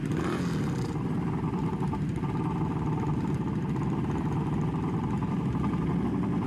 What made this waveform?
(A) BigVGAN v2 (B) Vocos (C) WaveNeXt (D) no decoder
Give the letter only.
D